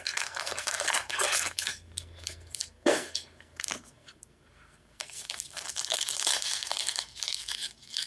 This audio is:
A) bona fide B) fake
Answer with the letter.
B